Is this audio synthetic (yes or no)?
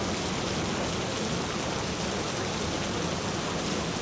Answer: no